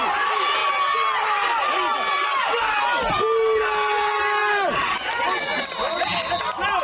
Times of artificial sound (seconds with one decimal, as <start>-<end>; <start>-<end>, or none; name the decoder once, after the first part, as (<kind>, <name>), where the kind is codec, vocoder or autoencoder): none